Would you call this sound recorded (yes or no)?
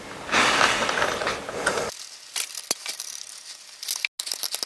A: yes